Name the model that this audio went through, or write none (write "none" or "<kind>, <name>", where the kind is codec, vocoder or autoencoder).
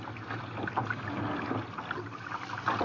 none